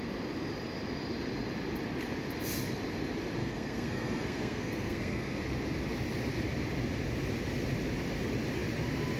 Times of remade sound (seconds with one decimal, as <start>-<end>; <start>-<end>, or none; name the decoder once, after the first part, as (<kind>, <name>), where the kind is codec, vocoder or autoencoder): 3.4-5.4 (codec, SNAC)